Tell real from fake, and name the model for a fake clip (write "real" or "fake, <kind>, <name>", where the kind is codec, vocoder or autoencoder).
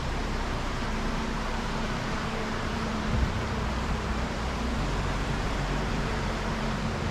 fake, vocoder, BigVGAN v2